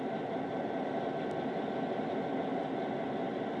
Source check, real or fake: real